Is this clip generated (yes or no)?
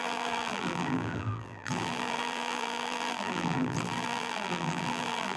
yes